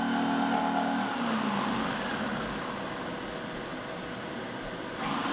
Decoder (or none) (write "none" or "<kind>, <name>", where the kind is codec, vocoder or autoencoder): none